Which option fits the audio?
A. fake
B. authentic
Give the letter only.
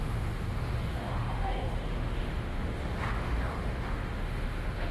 A